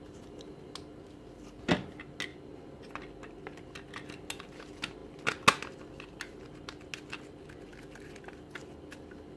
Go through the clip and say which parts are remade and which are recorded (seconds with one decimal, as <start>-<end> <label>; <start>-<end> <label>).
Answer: 0.0-7.7 recorded; 7.7-8.3 remade; 8.3-9.4 recorded